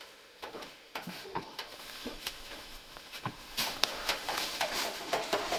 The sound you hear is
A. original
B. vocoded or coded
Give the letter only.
B